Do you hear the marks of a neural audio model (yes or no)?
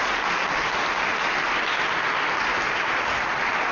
no